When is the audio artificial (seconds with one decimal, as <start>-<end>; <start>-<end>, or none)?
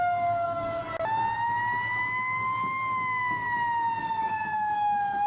0.0-0.8; 4.0-5.3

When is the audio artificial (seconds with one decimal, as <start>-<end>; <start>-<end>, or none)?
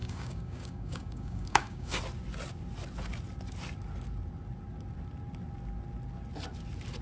0.0-2.0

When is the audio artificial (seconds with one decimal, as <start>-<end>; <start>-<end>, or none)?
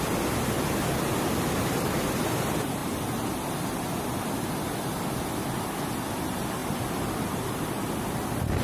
none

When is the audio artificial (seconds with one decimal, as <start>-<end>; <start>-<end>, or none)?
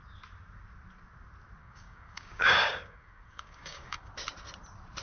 1.6-4.1